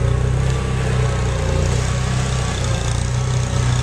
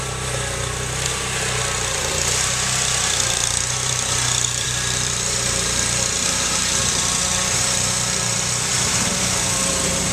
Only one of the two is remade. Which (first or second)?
second